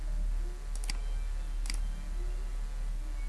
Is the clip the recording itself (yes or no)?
yes